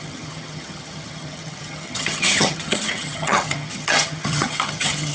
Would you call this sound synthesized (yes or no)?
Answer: yes